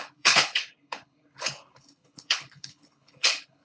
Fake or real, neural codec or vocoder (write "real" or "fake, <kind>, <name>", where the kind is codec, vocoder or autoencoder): fake, codec, HILCodec